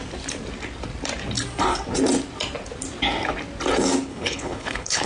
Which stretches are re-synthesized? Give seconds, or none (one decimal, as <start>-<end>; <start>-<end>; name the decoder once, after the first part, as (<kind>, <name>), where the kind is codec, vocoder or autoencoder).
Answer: 4.1-5.1 (codec, HILCodec)